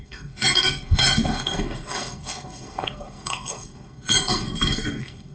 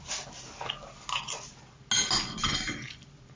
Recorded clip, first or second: second